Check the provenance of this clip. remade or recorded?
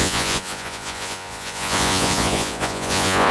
remade